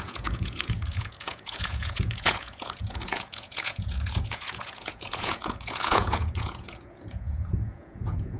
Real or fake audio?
fake